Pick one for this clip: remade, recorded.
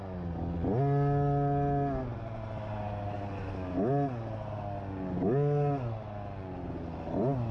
recorded